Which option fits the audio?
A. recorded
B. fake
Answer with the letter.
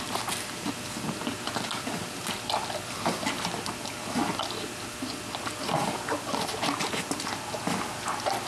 A